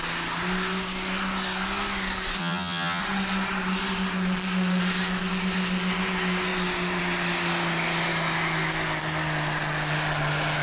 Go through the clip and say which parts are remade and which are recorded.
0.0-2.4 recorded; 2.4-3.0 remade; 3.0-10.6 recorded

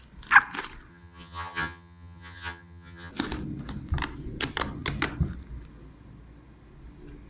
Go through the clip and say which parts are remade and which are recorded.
0.0-0.9 recorded; 0.9-3.1 remade; 3.1-7.3 recorded

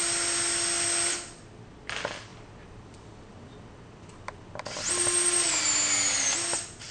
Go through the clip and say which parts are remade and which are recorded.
0.0-6.9 recorded

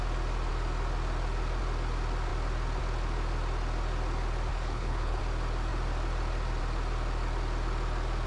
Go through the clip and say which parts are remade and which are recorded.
0.0-4.5 recorded; 4.5-5.2 remade; 5.2-8.3 recorded

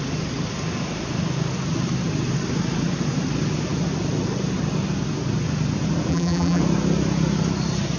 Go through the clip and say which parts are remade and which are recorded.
0.0-6.1 recorded; 6.1-6.6 remade; 6.6-8.0 recorded

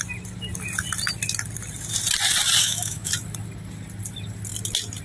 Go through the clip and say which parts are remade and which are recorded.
0.0-2.6 recorded; 2.6-3.1 remade; 3.1-5.0 recorded